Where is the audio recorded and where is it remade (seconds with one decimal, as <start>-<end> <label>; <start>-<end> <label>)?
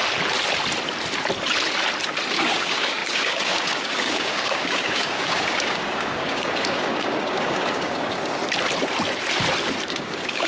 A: 0.0-2.3 recorded; 2.3-8.4 remade; 8.4-9.9 recorded; 9.9-10.5 remade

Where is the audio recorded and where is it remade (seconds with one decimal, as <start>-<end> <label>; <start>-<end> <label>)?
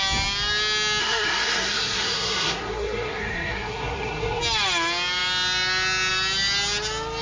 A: 0.0-1.0 recorded; 1.0-4.4 remade; 4.4-7.2 recorded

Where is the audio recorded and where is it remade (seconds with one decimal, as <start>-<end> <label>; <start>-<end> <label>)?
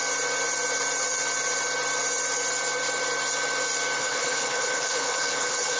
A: 0.0-4.0 recorded; 4.0-5.8 remade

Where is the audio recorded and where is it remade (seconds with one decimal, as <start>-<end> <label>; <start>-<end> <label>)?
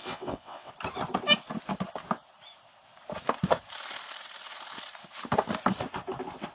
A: 0.0-0.7 remade; 0.7-6.5 recorded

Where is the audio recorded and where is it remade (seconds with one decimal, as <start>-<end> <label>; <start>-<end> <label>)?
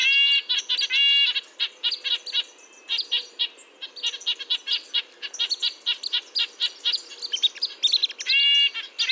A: 0.0-9.1 recorded